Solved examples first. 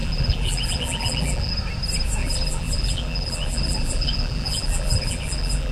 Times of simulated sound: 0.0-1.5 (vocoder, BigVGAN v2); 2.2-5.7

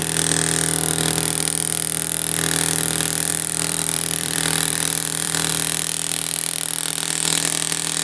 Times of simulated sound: 3.3-5.5 (vocoder, BigVGAN v2)

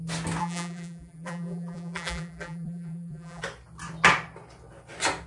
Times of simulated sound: 0.4-3.4 (vocoder, BigVGAN v2)

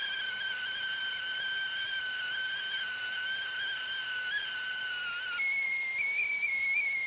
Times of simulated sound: none

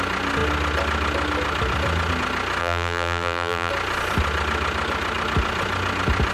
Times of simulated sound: 2.6-3.7 (vocoder, BigVGAN v2)

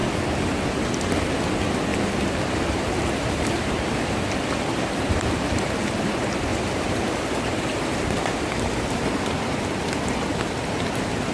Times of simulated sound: 1.9-3.8 (vocoder, BigVGAN v2); 6.5-9.6